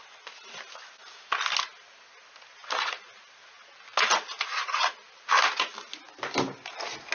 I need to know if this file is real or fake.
real